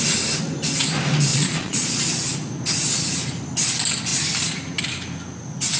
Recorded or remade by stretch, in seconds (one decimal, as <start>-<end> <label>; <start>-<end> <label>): 0.0-1.3 recorded; 1.3-2.0 remade; 2.0-5.8 recorded